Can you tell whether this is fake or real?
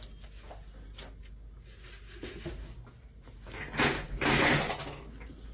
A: real